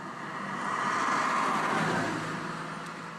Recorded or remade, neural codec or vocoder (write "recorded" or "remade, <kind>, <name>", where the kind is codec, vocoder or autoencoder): recorded